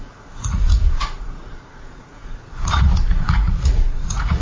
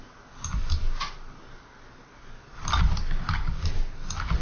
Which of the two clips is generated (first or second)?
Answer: first